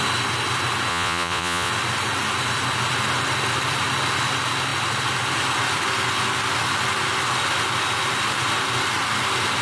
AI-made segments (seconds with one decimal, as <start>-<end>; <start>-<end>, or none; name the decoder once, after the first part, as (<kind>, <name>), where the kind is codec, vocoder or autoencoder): 0.9-1.7 (vocoder, Vocos)